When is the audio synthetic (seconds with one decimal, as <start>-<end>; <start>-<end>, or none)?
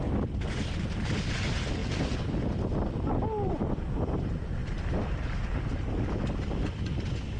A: none